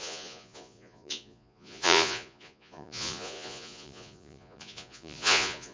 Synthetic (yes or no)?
yes